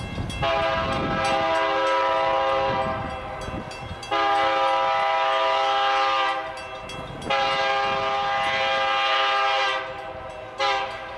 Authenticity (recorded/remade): recorded